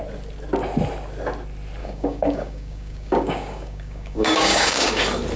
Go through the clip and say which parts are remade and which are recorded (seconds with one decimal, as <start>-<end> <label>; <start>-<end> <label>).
0.0-1.8 recorded; 1.8-5.0 remade; 5.0-5.4 recorded